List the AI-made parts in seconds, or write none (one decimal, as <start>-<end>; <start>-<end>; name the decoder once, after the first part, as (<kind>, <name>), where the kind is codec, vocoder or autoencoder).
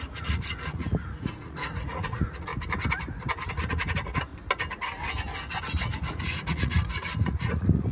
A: 0.0-2.5 (vocoder, Vocos); 3.5-4.3; 5.6-7.9